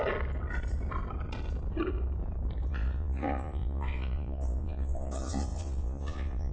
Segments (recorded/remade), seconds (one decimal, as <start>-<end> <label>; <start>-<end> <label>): 0.0-2.7 recorded; 2.7-6.5 remade